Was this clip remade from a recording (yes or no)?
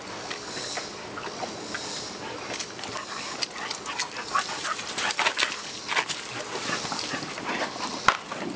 yes